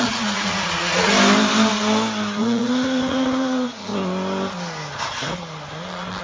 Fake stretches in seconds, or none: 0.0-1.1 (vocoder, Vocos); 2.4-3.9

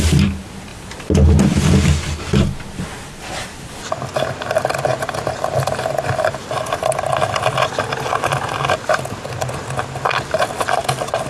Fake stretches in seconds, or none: none

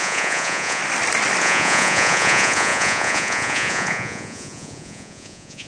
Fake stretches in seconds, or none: 0.0-0.8 (vocoder, Vocos); 1.4-5.7

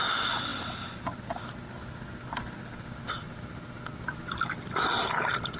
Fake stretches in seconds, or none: none

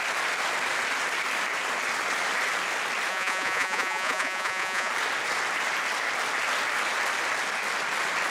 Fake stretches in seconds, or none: 3.1-4.9 (vocoder, Vocos)

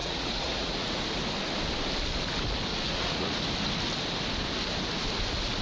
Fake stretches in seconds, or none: 0.0-1.0 (vocoder, Vocos); 2.7-3.4

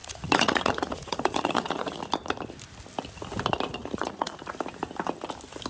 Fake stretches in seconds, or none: 0.0-2.0 (vocoder, Vocos); 3.8-4.5

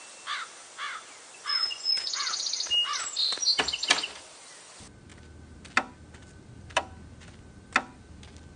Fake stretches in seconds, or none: 1.3-2.4 (vocoder, Vocos)